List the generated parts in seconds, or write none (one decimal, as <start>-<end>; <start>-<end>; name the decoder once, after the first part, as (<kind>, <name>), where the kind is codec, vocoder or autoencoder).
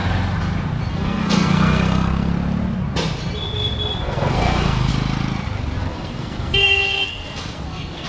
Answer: 0.9-2.3 (codec, SNAC); 4.0-4.9; 5.9-8.1